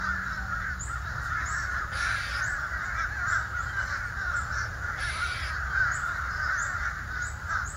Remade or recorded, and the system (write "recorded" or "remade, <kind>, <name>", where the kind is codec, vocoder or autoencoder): recorded